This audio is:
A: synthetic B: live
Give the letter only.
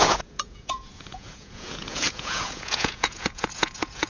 A